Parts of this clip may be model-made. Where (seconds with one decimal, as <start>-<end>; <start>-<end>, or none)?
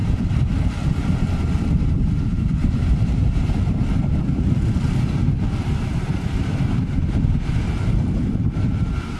0.0-9.2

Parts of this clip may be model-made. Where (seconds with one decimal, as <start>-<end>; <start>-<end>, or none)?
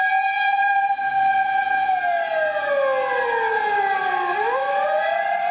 3.5-5.5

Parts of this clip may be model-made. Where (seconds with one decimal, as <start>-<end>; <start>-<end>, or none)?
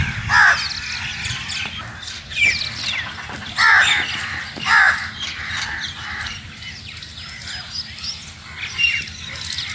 none